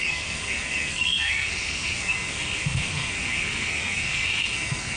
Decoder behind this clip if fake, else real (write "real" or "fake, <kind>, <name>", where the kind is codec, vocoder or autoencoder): fake, codec, SNAC